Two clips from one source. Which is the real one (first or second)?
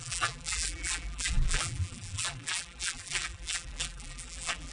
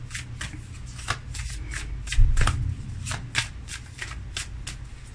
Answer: second